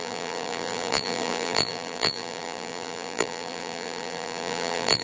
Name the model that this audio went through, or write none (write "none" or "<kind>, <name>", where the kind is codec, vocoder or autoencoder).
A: vocoder, BigVGAN v2